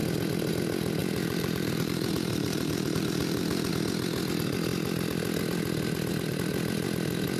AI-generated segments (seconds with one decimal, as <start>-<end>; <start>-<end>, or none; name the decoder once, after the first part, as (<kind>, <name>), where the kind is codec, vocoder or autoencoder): 1.0-3.7 (vocoder, BigVGAN v2)